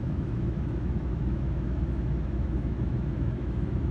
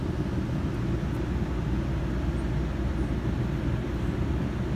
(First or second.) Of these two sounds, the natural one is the second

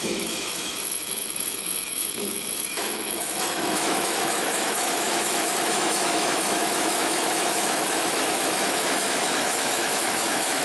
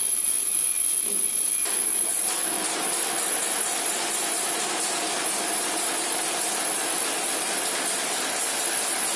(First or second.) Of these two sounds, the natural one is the second